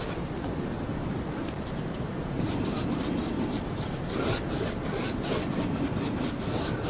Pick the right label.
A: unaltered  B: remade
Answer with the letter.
A